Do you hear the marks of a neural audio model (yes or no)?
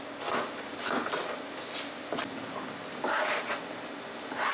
no